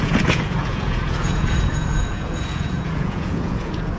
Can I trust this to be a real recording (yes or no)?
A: no